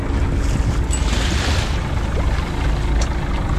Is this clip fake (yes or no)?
no